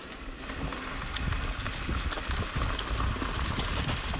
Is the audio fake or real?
real